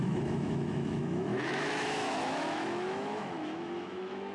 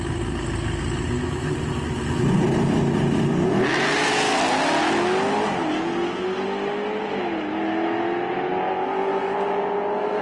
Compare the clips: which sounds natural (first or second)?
second